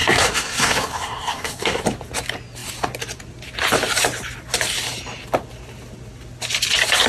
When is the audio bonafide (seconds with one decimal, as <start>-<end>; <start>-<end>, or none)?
1.8-7.1